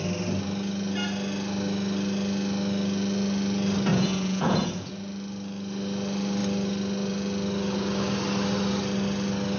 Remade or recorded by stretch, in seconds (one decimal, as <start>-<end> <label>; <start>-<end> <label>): 0.0-3.9 recorded; 3.9-4.9 remade; 4.9-9.6 recorded